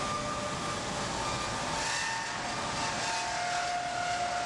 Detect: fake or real real